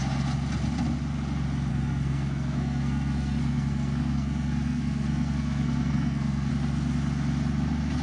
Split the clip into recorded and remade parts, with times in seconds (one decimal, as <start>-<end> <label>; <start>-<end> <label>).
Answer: 0.0-1.7 recorded; 1.7-6.5 remade; 6.5-8.0 recorded